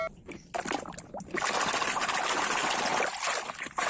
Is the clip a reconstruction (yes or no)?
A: no